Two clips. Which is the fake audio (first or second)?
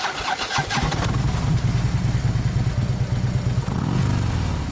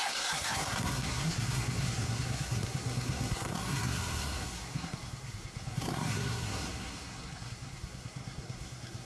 second